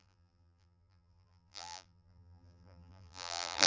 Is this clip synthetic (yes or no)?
yes